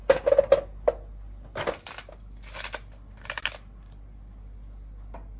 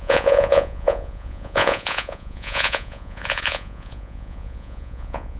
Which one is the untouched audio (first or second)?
first